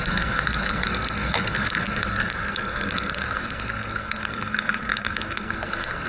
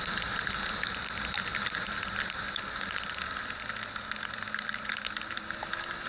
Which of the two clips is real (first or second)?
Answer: second